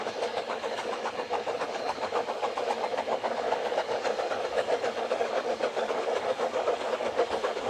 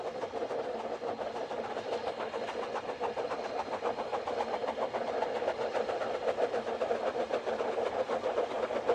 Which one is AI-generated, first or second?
first